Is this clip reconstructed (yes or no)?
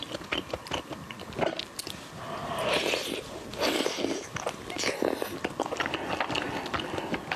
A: no